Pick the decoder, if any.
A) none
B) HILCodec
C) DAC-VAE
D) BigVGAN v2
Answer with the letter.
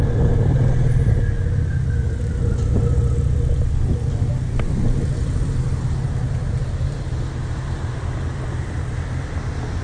A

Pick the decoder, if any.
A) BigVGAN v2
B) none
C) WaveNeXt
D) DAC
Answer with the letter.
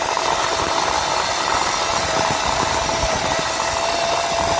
B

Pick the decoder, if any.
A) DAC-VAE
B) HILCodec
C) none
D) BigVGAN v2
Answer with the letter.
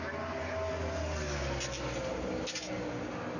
C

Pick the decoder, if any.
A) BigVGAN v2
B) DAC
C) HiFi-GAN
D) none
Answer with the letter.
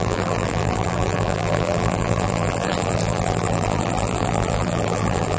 A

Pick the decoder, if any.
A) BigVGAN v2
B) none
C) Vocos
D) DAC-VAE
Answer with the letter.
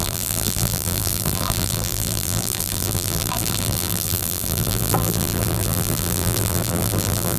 A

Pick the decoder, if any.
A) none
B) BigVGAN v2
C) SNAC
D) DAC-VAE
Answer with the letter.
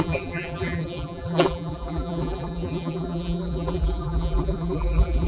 B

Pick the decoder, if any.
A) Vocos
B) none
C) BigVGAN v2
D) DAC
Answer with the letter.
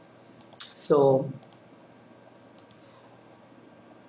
B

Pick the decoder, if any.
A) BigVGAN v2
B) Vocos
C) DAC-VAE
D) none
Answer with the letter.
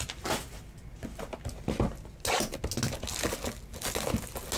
D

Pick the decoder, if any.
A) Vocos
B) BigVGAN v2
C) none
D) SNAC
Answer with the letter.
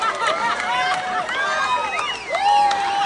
C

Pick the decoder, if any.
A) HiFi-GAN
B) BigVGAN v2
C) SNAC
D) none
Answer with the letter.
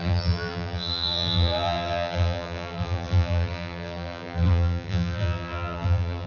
B